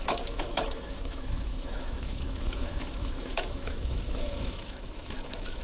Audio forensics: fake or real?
fake